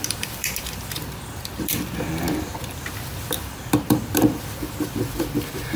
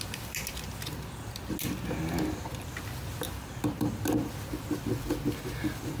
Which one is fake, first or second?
first